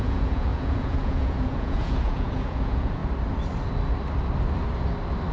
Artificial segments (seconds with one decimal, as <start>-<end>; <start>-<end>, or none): 0.0-3.0